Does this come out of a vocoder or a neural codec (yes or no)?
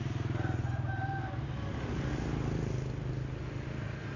no